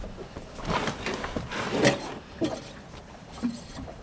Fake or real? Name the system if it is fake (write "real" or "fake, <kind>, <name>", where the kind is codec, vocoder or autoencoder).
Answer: real